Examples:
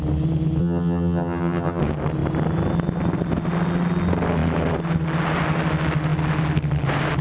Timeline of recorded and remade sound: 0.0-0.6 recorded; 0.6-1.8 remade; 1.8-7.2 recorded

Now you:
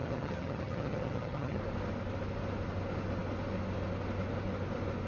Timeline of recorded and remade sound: 0.0-1.6 remade; 1.6-5.1 recorded